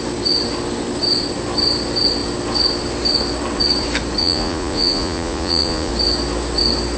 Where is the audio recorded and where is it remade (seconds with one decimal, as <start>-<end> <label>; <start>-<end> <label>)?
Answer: 0.0-4.2 recorded; 4.2-5.9 remade; 5.9-7.0 recorded